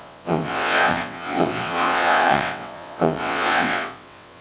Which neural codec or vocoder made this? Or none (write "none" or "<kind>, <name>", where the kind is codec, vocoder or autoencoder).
vocoder, WaveNeXt